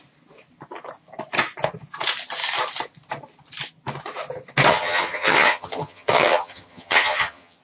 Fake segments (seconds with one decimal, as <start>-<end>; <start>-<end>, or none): 4.7-7.6